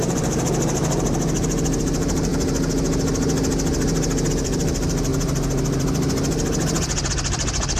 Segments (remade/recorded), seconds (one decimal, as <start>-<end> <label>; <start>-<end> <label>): 0.0-0.8 remade; 0.8-1.8 recorded; 1.8-2.3 remade; 2.3-4.3 recorded; 4.3-5.1 remade; 5.1-7.1 recorded; 7.1-7.8 remade